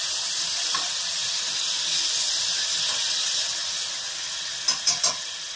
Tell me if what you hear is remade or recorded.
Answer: recorded